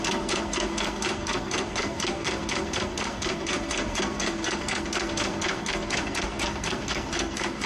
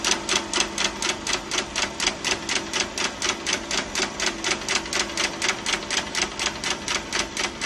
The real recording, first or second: second